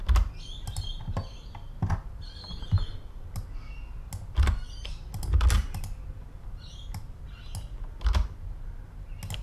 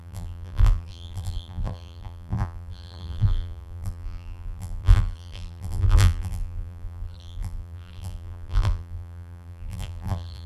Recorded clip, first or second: first